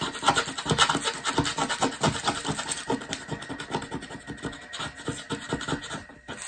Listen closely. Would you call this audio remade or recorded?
recorded